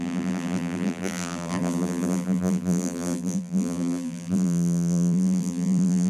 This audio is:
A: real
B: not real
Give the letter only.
B